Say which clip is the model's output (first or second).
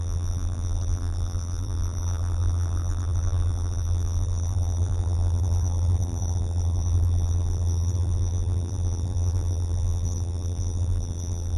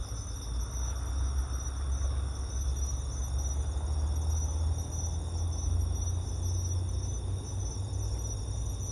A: first